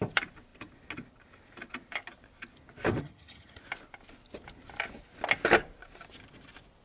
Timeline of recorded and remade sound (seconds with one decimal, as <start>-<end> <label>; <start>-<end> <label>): 0.0-3.0 recorded; 3.0-3.6 remade; 3.6-6.8 recorded